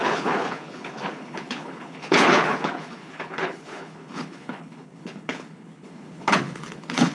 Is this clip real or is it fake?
fake